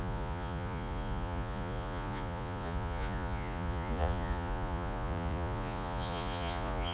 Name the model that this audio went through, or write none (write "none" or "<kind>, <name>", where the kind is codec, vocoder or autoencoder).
vocoder, Vocos